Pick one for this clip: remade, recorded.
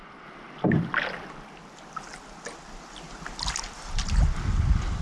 recorded